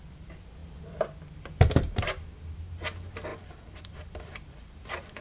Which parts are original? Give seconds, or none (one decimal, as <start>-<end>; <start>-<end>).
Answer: 0.6-1.3; 3.3-3.8